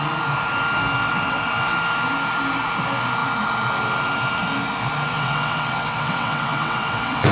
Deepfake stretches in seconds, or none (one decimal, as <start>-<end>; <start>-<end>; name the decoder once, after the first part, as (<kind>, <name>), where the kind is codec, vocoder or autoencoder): 1.0-1.8 (vocoder, WaveNeXt); 5.1-7.3